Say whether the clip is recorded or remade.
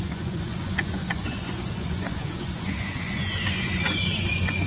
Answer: remade